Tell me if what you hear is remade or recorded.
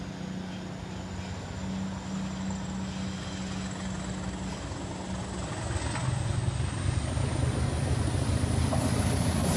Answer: recorded